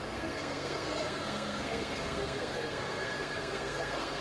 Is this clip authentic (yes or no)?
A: no